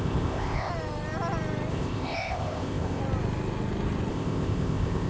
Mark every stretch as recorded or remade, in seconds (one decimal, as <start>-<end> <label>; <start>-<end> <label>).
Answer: 0.0-0.7 remade; 0.7-1.7 recorded; 1.7-3.0 remade; 3.0-4.1 recorded; 4.1-5.1 remade